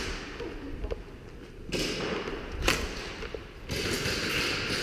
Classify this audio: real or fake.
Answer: real